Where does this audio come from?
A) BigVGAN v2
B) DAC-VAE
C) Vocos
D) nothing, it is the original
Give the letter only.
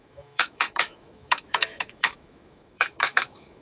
B